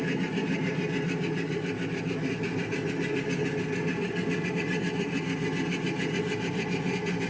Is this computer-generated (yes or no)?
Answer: no